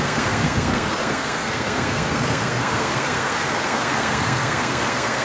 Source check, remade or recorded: remade